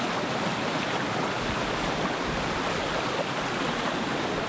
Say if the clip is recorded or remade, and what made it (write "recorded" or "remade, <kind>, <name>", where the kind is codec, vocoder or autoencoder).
recorded